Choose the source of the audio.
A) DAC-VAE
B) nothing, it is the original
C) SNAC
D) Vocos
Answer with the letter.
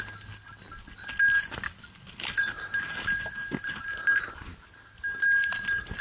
B